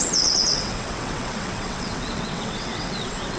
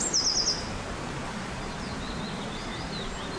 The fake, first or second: first